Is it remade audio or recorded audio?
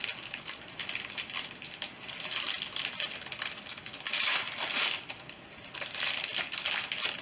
recorded